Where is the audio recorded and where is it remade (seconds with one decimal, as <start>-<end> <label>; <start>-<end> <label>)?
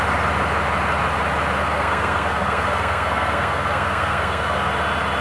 0.0-1.6 recorded; 1.6-4.7 remade; 4.7-5.2 recorded